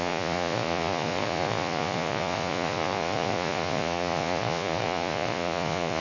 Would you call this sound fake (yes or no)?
yes